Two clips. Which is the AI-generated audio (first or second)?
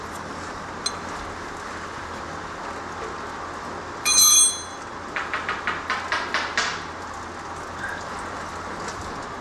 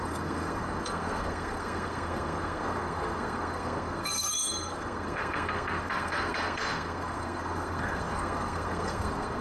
second